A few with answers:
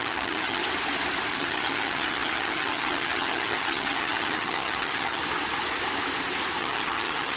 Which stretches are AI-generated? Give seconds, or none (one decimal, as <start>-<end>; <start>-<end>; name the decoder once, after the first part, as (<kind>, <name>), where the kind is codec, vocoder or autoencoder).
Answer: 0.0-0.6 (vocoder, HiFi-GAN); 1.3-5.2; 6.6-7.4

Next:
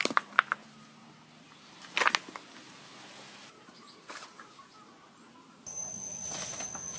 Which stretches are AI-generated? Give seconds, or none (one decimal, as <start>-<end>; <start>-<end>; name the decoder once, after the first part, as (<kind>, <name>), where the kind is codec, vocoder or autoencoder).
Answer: none

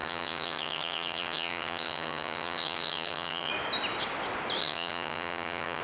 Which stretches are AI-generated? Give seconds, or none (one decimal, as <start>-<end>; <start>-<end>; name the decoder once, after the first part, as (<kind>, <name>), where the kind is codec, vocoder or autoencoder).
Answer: 0.0-3.5 (vocoder, HiFi-GAN); 4.6-5.8

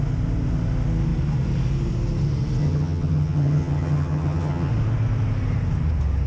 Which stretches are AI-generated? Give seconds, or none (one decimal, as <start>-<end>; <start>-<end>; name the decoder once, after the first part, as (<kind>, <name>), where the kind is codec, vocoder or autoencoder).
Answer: 2.6-4.7 (vocoder, HiFi-GAN)